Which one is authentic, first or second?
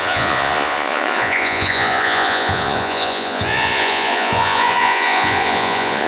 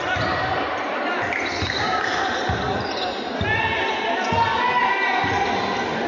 second